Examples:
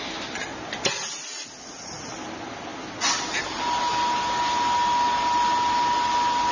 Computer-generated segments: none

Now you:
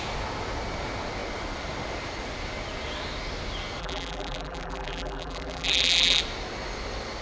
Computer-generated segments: 3.8-6.2 (vocoder, BigVGAN v2)

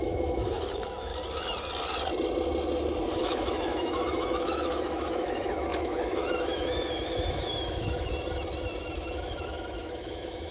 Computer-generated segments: 0.0-1.1 (autoencoder, DAC-VAE); 3.2-8.1; 8.8-10.5

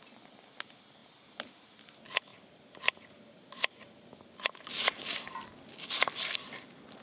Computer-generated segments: none